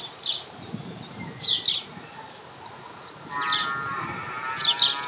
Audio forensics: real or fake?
real